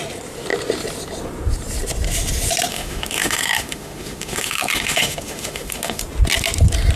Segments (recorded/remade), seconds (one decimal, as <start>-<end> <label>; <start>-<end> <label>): 0.0-2.7 recorded; 2.7-6.0 remade; 6.0-7.0 recorded